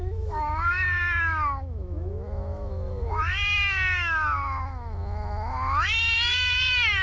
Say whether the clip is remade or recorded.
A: remade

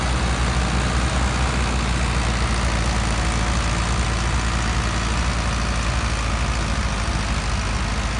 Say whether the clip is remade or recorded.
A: recorded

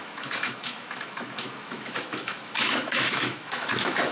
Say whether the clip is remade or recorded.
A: remade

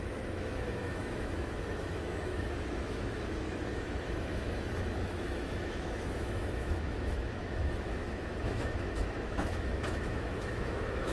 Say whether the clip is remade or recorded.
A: remade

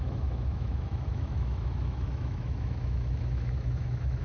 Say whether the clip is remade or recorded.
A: remade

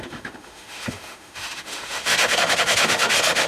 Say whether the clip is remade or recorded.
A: remade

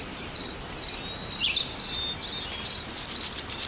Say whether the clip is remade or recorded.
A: recorded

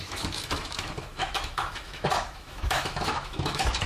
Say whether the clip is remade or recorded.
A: remade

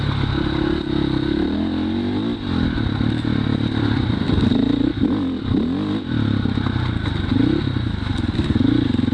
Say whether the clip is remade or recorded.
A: recorded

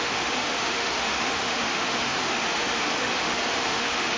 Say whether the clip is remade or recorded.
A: remade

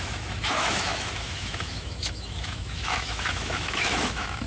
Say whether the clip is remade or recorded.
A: remade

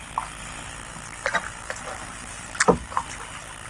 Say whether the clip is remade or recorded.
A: recorded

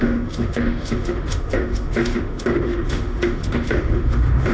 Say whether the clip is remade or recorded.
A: remade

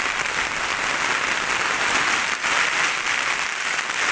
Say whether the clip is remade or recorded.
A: recorded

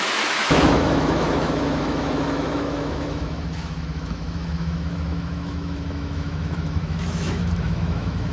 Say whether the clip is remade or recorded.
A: remade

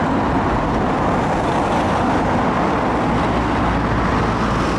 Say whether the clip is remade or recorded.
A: recorded